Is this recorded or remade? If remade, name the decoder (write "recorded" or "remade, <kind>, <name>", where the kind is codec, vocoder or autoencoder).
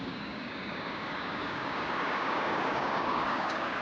remade, codec, DAC